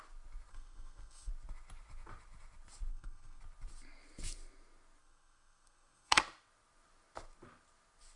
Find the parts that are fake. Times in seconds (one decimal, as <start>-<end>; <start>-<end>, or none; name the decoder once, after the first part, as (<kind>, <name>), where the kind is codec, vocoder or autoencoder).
0.5-1.3 (codec, SNAC); 2.9-3.4; 5.0-6.2